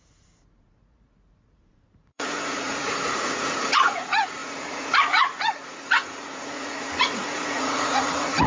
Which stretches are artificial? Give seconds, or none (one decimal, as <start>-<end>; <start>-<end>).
0.0-8.5